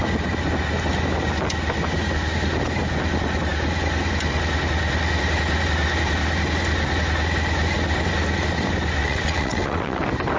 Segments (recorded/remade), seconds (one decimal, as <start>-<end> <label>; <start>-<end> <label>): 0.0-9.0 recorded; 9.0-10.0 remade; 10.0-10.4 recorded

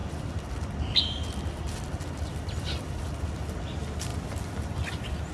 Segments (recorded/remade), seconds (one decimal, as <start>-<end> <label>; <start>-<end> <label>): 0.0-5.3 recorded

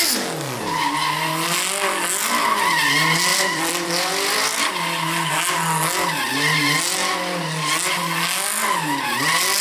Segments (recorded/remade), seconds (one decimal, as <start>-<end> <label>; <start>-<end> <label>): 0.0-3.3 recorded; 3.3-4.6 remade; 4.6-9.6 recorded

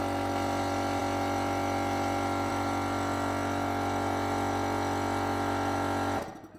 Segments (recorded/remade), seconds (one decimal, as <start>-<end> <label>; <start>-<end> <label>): 0.0-6.6 recorded

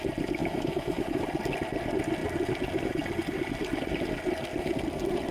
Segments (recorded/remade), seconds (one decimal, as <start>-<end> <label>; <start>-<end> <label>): 0.0-0.4 recorded; 0.4-1.2 remade; 1.2-5.3 recorded

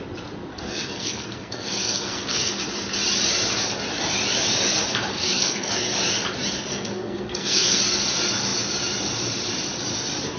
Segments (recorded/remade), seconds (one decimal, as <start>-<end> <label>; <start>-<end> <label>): 0.0-0.5 recorded; 0.5-2.6 remade; 2.6-5.1 recorded; 5.1-5.7 remade; 5.7-6.7 recorded; 6.7-7.8 remade; 7.8-10.4 recorded

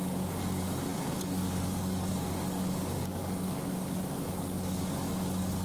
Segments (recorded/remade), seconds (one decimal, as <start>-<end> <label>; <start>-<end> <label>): 0.0-5.6 remade

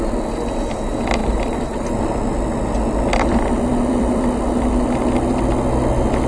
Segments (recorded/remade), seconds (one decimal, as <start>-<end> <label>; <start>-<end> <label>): 0.0-1.2 recorded; 1.2-1.8 remade; 1.8-3.7 recorded; 3.7-4.7 remade; 4.7-6.3 recorded